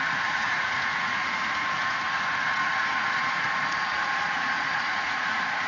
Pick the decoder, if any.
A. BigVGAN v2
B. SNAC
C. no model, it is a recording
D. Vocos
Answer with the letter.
D